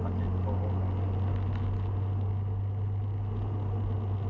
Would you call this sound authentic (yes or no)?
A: yes